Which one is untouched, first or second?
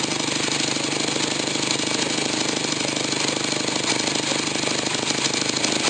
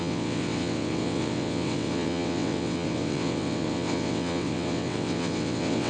first